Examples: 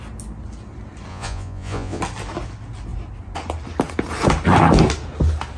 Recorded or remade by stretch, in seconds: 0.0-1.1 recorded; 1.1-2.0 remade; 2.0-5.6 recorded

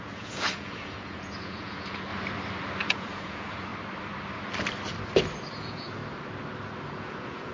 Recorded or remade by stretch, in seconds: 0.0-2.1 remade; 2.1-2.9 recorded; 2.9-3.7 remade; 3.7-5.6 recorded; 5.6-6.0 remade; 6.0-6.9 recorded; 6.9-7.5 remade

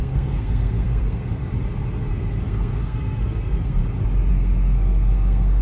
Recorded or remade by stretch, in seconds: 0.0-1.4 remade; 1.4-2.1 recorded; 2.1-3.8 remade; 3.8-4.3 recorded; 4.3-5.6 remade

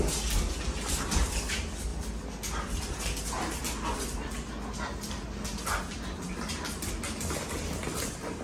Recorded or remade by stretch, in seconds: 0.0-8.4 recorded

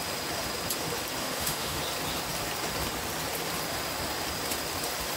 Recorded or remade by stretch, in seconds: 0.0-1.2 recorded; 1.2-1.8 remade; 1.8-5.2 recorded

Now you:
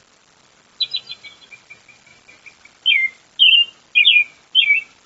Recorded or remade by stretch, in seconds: 0.0-5.1 recorded